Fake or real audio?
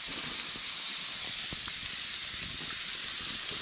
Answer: real